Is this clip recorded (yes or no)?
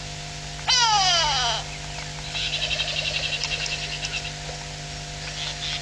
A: yes